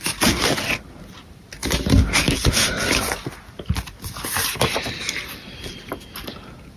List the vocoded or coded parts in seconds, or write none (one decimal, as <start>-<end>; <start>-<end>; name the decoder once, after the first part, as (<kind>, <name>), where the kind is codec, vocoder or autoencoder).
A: none